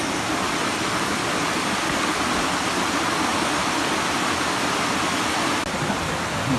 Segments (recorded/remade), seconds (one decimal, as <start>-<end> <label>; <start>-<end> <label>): 0.0-6.6 recorded